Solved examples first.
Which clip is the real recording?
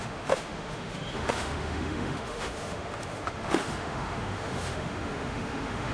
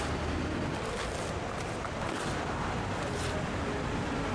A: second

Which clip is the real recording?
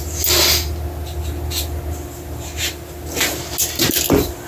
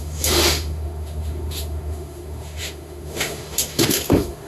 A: first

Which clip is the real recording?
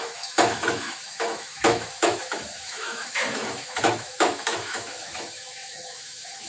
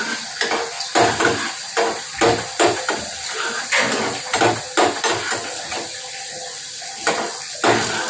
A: second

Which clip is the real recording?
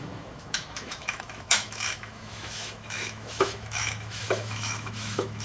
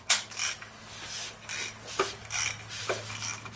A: second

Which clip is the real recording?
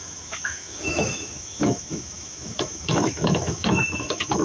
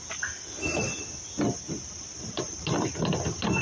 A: second